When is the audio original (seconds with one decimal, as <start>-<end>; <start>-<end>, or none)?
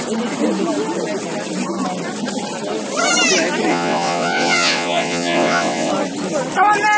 0.0-3.7; 5.9-7.0